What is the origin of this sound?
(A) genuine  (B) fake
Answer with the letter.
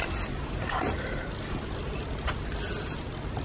A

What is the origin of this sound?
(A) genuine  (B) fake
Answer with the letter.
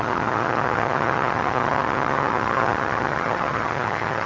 B